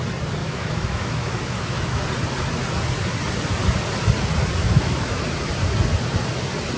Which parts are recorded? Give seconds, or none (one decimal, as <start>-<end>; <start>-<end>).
0.0-0.4; 2.0-4.6; 5.2-6.8